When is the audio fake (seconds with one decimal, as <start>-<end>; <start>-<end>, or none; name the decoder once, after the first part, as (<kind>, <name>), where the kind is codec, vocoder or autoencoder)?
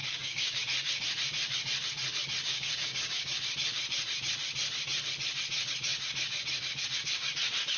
0.0-0.6 (codec, DAC); 2.5-3.4